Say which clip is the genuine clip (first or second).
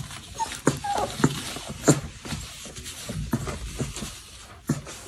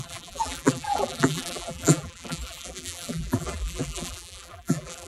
first